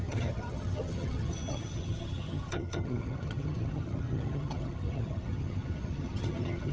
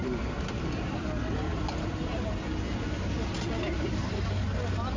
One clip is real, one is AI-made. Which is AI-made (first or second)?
first